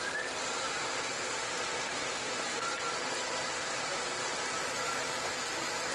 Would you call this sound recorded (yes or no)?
yes